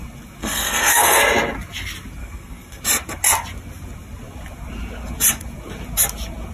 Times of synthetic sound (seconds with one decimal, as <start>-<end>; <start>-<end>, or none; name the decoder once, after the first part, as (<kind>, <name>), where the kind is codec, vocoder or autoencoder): 0.4-1.2 (codec, SNAC); 2.2-2.8